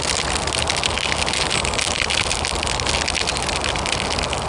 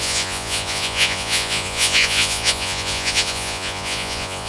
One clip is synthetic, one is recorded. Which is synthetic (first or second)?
second